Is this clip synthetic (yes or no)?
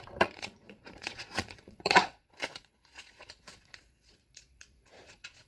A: yes